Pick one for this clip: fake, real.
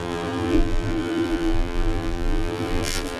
fake